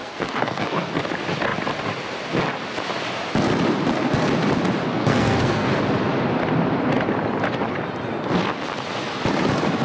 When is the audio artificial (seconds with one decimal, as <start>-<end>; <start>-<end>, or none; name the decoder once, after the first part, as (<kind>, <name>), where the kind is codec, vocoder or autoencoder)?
0.0-1.0 (codec, SNAC); 4.8-5.8